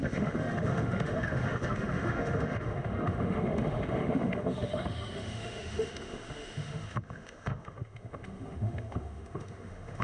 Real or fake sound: fake